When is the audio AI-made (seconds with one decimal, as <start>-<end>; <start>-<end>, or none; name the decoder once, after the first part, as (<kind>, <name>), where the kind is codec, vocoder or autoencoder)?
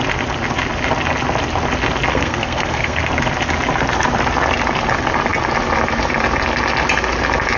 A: 2.1-3.0 (codec, SNAC)